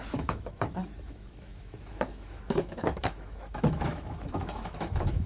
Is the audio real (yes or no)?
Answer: no